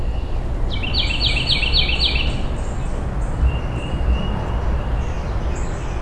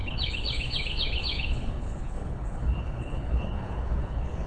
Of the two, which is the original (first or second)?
first